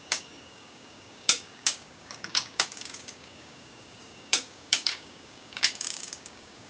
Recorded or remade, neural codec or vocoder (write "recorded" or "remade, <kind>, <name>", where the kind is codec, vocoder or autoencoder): remade, codec, DAC